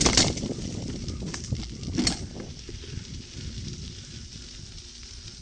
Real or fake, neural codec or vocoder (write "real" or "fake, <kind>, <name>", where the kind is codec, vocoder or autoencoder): real